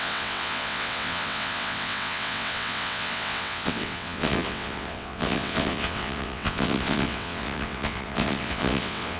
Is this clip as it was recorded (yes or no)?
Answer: no